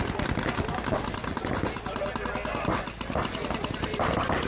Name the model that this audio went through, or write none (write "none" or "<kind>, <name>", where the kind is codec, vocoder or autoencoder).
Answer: none